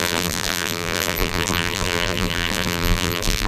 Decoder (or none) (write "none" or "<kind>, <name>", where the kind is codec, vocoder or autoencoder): vocoder, BigVGAN v2